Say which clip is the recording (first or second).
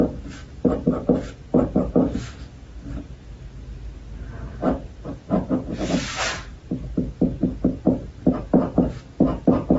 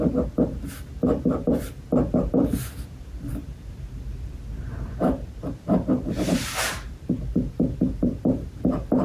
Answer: first